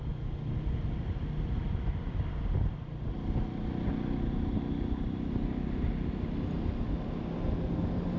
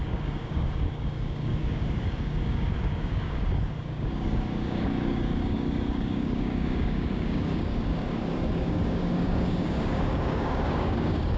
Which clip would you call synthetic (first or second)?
second